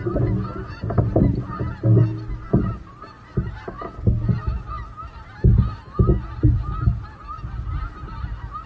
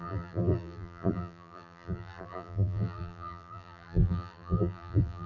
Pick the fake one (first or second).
second